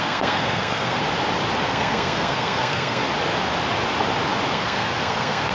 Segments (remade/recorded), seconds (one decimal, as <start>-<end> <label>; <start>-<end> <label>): 0.0-1.0 remade; 1.0-1.6 recorded; 1.6-3.0 remade; 3.0-4.5 recorded; 4.5-5.5 remade

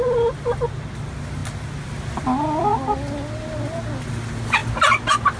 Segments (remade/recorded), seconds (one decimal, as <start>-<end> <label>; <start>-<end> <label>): 0.0-5.4 recorded

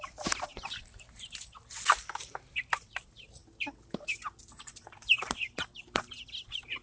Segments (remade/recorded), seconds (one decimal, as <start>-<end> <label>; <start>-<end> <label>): 0.0-0.5 remade; 0.5-2.3 recorded; 2.3-3.4 remade; 3.4-4.4 recorded; 4.4-6.8 remade